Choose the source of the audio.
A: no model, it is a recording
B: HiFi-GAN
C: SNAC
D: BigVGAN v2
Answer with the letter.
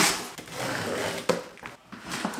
A